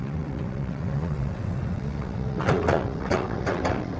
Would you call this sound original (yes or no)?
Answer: no